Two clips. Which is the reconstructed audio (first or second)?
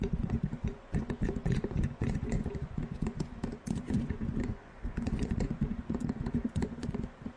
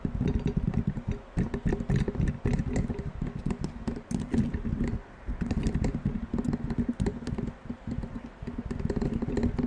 first